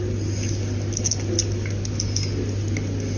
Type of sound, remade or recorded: recorded